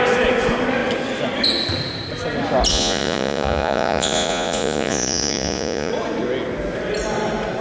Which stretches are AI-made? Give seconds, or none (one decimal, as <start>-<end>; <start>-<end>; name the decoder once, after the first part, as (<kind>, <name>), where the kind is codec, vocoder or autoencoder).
2.7-5.9 (vocoder, Vocos)